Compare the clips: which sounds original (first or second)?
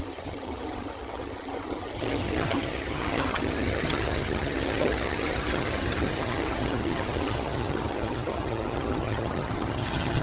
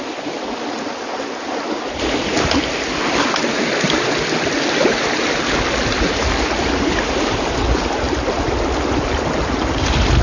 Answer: second